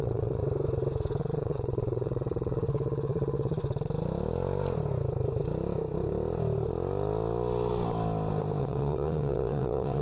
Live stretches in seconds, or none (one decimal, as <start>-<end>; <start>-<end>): 0.4-1.2; 3.6-8.6